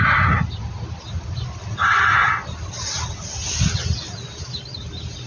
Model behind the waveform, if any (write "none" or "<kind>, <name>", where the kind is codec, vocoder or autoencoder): none